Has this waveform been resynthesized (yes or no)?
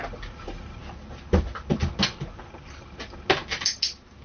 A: no